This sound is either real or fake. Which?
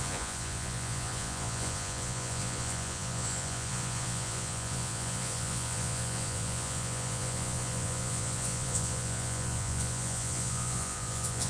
fake